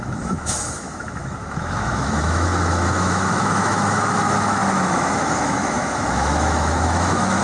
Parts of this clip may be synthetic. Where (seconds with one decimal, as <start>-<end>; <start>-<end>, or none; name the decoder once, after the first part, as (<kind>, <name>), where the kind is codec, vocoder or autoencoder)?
0.0-7.4 (autoencoder, DAC-VAE)